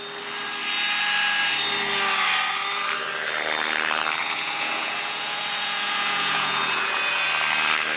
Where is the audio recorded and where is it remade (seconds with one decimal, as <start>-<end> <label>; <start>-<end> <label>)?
0.0-4.2 recorded; 4.2-7.3 remade; 7.3-8.0 recorded